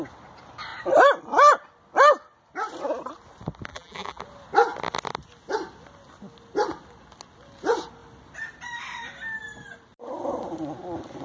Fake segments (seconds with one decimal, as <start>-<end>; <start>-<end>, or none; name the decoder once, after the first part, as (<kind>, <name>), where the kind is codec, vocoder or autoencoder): 3.7-4.2 (vocoder, BigVGAN v2)